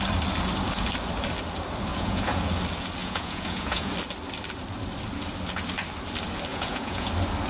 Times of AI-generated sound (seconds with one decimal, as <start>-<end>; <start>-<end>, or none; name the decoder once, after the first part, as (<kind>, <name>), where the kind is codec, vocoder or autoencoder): 1.9-2.4 (vocoder, Vocos); 3.0-3.9; 6.5-7.1